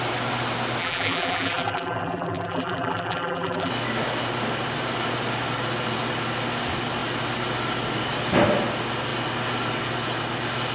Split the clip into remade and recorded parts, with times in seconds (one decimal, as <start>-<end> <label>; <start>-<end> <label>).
0.0-0.8 recorded; 0.8-3.7 remade; 3.7-10.7 recorded